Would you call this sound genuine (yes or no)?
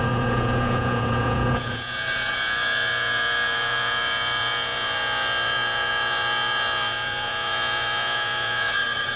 no